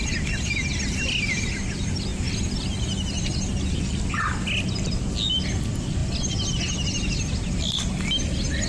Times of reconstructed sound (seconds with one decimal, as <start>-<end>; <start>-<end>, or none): none